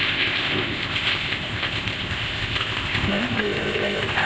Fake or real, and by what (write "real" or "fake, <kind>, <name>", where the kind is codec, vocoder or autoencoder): fake, codec, ZipCodec